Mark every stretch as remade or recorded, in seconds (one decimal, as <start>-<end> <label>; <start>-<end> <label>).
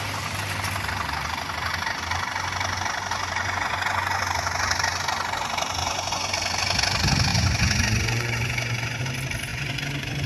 0.0-3.4 recorded; 3.4-4.2 remade; 4.2-5.8 recorded; 5.8-6.3 remade; 6.3-7.3 recorded; 7.3-9.0 remade; 9.0-9.5 recorded; 9.5-10.3 remade